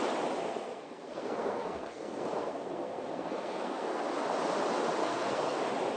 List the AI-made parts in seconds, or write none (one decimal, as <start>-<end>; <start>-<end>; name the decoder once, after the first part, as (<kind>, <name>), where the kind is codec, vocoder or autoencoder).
0.4-4.0 (codec, SNAC); 5.0-5.6